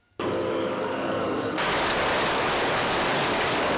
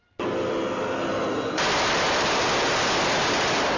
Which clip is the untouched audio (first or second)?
second